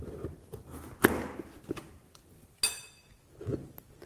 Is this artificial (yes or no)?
no